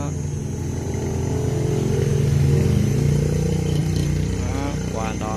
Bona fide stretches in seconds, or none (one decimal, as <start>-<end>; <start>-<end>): 0.0-3.8; 4.5-5.4